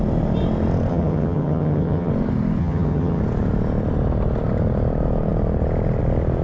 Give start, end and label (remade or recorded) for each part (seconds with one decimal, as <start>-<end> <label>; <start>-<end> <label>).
0.0-0.9 recorded; 0.9-2.1 remade; 2.1-2.6 recorded; 2.6-3.2 remade; 3.2-6.4 recorded